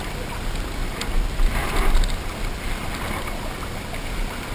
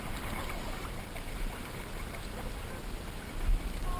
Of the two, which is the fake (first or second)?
second